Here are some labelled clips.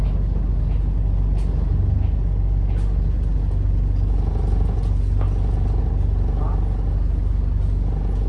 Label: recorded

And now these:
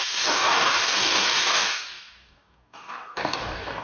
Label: remade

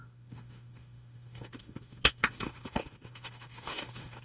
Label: remade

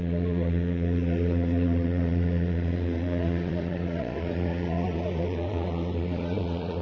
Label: remade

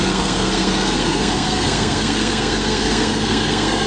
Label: remade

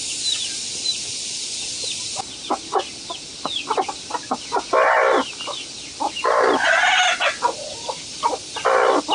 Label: recorded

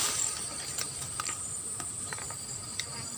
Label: remade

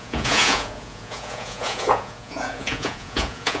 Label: remade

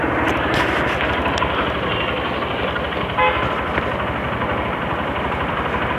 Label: recorded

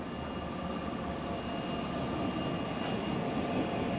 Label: recorded